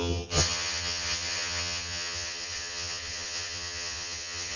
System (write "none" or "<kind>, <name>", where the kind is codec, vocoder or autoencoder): vocoder, HiFi-GAN